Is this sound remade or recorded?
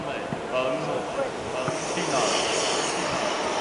recorded